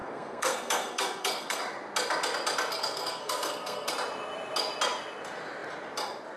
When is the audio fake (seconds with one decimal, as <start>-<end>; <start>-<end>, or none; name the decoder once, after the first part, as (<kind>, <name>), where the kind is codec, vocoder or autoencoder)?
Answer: 0.0-1.6 (codec, SNAC); 2.7-3.9